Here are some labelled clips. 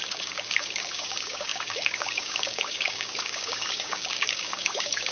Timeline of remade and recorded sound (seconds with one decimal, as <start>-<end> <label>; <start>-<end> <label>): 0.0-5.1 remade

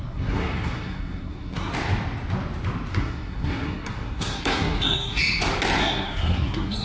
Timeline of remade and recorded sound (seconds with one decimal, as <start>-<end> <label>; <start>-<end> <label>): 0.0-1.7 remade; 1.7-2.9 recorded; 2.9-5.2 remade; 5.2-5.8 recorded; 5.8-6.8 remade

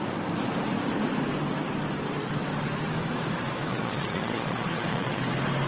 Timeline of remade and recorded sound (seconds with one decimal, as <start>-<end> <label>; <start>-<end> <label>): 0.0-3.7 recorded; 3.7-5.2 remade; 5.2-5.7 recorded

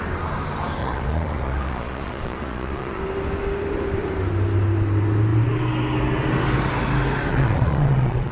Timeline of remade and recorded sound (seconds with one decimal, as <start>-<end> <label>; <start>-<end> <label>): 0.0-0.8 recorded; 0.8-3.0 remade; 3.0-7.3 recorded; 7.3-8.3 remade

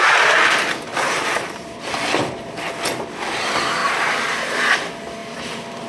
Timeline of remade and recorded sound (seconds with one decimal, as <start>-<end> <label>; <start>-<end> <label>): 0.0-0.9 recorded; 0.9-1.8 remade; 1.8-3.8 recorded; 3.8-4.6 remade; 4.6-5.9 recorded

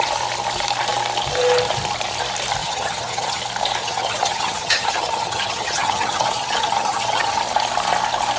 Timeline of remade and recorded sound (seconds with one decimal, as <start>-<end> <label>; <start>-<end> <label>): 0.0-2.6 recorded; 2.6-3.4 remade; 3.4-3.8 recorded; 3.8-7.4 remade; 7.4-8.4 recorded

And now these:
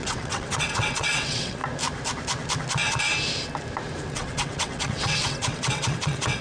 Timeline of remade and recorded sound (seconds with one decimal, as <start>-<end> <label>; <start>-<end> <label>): 0.0-1.6 remade; 1.6-4.1 recorded; 4.1-6.4 remade

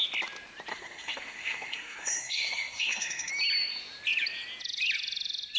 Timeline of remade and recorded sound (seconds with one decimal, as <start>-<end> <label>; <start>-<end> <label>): 0.0-0.7 recorded; 0.7-3.3 remade; 3.3-5.6 recorded